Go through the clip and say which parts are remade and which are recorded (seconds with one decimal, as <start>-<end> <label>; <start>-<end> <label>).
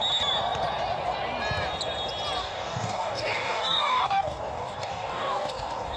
0.0-2.4 recorded; 2.4-6.0 remade